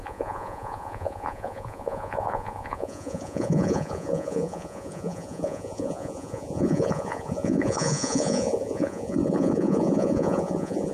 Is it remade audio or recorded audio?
remade